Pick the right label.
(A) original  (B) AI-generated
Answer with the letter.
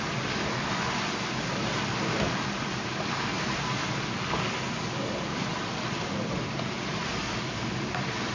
B